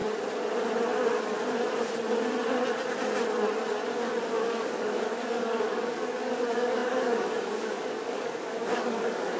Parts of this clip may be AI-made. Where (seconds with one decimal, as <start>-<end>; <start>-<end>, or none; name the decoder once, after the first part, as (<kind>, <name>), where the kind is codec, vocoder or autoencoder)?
4.3-9.4 (codec, DAC)